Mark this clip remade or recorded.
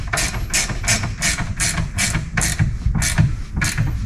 recorded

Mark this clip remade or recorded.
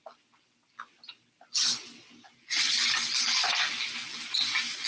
recorded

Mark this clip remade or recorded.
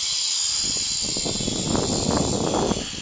recorded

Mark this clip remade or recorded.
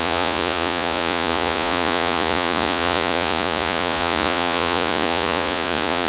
remade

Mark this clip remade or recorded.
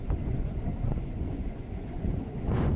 remade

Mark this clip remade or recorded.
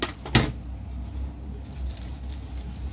recorded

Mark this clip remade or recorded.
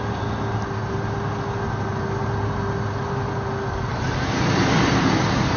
recorded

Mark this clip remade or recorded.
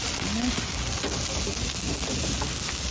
recorded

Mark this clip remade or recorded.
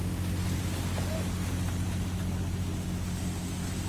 recorded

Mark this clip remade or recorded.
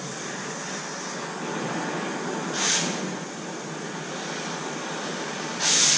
remade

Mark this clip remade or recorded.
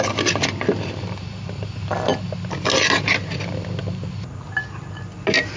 recorded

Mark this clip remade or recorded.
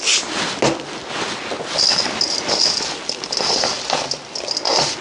recorded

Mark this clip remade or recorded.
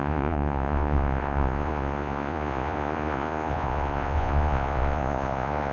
remade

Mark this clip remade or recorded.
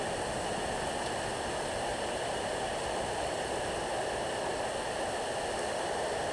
recorded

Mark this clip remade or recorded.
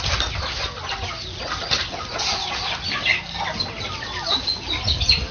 recorded